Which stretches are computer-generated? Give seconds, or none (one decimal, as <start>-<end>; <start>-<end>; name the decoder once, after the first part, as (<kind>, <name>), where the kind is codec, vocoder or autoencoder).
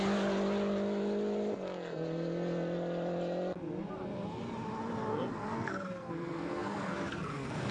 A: 5.1-7.7 (codec, SNAC)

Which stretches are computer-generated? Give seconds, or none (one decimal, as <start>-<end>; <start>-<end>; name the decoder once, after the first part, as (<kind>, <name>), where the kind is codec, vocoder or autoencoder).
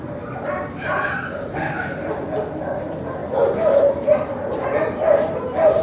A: 0.0-2.0 (vocoder, BigVGAN v2); 2.8-3.2; 3.9-5.8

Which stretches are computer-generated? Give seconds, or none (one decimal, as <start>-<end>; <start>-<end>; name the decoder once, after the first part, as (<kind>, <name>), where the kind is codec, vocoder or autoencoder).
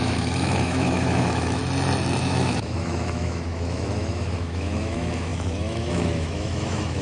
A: 0.0-1.6 (autoencoder, DAC-VAE); 2.2-7.0